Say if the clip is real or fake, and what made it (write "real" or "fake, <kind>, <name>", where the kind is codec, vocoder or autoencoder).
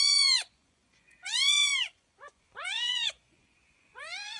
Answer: fake, vocoder, Vocos